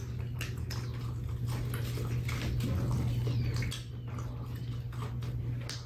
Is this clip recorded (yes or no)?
yes